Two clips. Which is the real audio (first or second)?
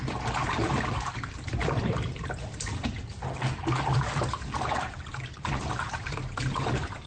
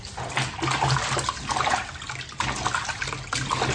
second